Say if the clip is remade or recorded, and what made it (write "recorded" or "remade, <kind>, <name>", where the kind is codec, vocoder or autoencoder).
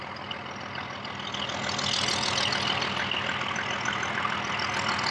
recorded